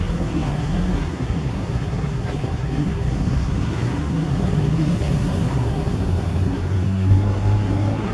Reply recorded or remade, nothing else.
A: remade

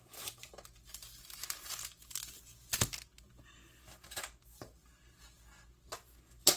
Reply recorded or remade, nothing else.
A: recorded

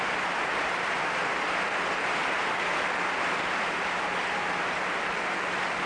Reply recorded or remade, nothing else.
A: recorded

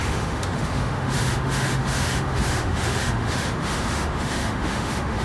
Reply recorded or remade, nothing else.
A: remade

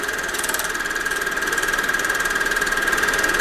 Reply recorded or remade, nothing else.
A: remade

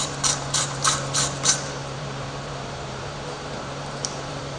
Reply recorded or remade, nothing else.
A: remade